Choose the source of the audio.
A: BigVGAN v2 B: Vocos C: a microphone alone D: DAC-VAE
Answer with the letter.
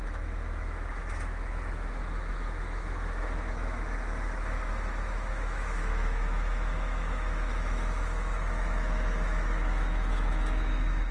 D